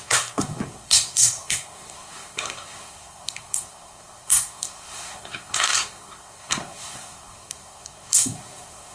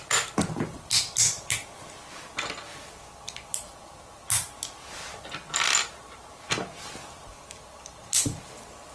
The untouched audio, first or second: second